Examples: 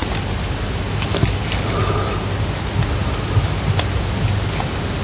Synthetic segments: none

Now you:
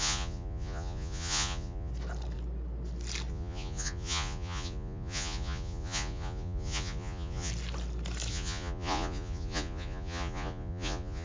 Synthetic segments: 0.0-1.9 (vocoder, Vocos); 3.3-7.5; 8.3-11.2

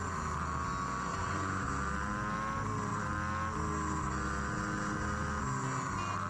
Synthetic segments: 1.1-1.7 (vocoder, Vocos)

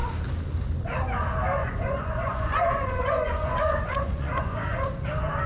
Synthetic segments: 1.6-4.9 (vocoder, Vocos)